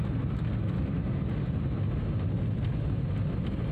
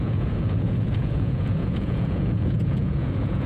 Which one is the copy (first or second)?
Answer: second